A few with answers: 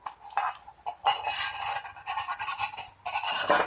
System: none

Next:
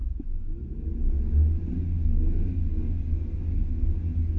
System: none